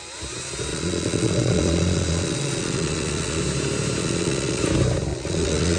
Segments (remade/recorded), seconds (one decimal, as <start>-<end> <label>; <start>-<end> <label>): 0.0-0.7 recorded; 0.7-3.4 remade; 3.4-4.0 recorded; 4.0-4.6 remade; 4.6-5.1 recorded; 5.1-5.8 remade